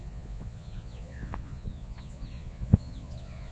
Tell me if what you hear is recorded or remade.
remade